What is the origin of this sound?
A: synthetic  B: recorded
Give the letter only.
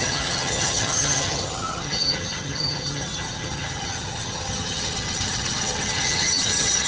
A